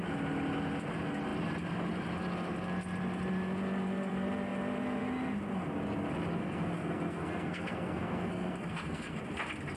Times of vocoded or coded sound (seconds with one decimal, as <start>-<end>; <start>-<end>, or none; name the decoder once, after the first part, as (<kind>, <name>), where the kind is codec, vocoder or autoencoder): 6.4-9.2 (codec, SNAC)